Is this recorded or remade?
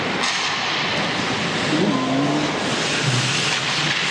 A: recorded